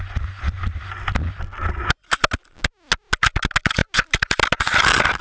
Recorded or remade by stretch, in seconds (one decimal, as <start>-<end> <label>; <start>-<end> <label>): 0.0-5.2 recorded